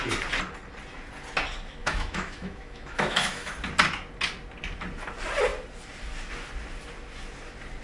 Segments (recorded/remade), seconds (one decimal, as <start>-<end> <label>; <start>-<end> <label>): 0.0-1.8 recorded; 1.8-3.5 remade; 3.5-7.8 recorded